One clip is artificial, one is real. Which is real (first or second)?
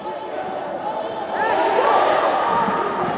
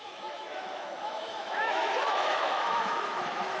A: first